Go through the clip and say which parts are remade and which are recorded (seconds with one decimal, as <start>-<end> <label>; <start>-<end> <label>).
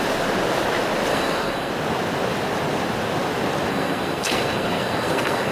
0.0-1.1 recorded; 1.1-1.7 remade; 1.7-3.7 recorded; 3.7-5.5 remade